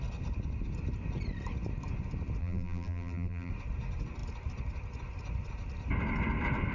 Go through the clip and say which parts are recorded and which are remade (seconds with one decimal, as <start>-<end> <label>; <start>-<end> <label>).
0.0-2.4 recorded; 2.4-3.5 remade; 3.5-6.7 recorded